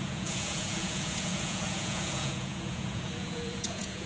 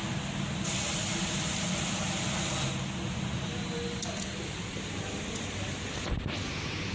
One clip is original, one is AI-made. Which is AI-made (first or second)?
first